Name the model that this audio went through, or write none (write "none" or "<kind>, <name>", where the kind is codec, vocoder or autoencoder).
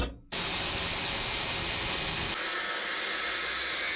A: none